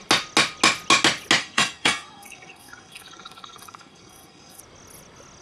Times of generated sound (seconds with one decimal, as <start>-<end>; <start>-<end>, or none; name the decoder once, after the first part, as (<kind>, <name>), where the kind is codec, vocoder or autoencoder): 1.4-4.6 (codec, SNAC)